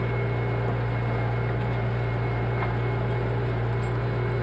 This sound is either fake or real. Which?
real